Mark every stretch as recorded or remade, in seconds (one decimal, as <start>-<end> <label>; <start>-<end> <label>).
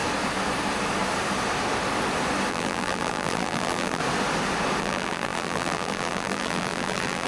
0.0-2.5 recorded; 2.5-4.0 remade; 4.0-4.8 recorded; 4.8-7.3 remade